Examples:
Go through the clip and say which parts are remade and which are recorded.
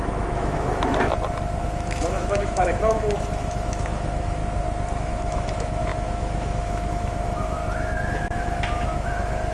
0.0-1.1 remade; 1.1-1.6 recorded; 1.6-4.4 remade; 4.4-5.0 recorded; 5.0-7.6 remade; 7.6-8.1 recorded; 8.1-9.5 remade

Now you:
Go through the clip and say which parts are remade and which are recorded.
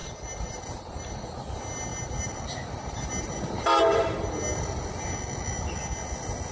0.0-6.5 recorded